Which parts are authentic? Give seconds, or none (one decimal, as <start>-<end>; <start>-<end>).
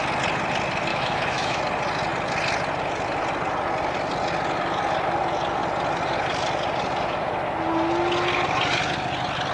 0.0-0.9; 1.6-9.5